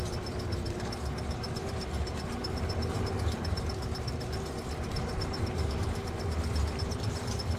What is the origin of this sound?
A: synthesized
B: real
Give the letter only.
A